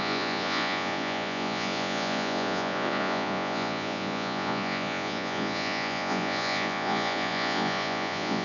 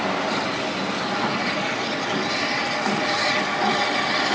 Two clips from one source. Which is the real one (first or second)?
second